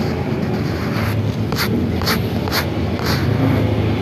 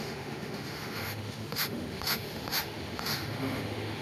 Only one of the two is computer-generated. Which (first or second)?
second